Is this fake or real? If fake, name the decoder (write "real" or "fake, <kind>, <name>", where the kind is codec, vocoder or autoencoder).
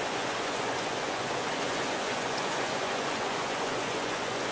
fake, vocoder, Vocos